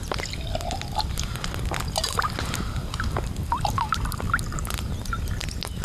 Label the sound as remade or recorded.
recorded